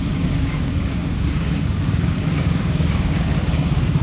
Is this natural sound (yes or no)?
no